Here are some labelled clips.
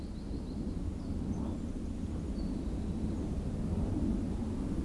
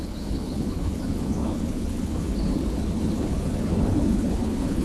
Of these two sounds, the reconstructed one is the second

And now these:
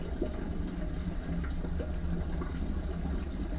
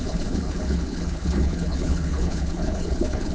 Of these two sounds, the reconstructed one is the second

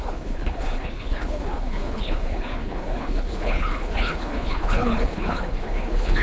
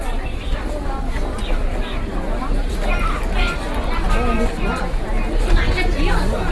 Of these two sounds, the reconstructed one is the first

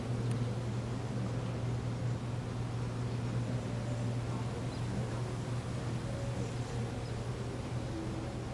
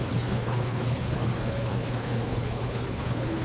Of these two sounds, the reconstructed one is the second